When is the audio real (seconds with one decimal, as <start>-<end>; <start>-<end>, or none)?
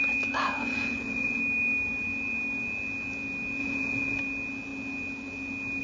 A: 0.0-0.6; 1.4-3.6; 4.2-5.8